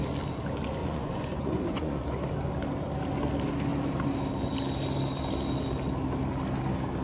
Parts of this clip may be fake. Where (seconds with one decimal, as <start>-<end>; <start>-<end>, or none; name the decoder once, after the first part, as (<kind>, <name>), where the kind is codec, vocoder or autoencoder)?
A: 0.8-2.0 (vocoder, Vocos)